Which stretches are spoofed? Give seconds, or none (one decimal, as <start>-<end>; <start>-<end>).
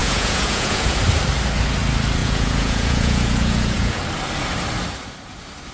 0.0-1.0; 2.2-4.0